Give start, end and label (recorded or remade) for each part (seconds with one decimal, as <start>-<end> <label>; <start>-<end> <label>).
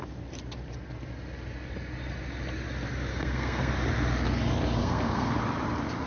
0.0-3.1 recorded; 3.1-3.7 remade; 3.7-4.8 recorded; 4.8-5.3 remade; 5.3-6.1 recorded